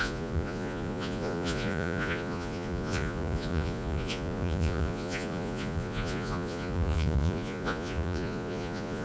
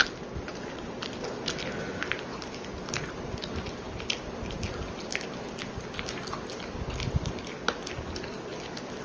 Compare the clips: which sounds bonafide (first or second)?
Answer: second